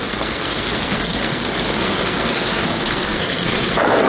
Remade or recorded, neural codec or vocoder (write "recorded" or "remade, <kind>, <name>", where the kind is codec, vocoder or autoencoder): remade, codec, SNAC